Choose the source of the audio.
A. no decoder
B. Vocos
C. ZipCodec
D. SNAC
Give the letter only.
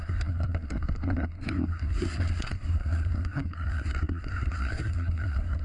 D